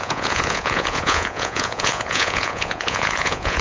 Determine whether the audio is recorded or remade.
remade